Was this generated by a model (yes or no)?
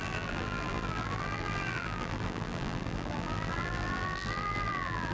yes